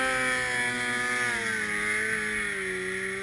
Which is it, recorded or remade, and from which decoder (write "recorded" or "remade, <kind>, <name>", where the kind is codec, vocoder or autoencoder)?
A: recorded